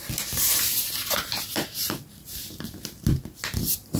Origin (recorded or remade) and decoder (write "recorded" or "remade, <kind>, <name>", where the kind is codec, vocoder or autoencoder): remade, vocoder, BigVGAN v2